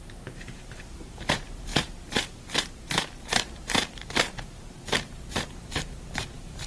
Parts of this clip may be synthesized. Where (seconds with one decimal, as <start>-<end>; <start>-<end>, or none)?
0.0-6.7